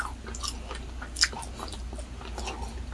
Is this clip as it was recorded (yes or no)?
yes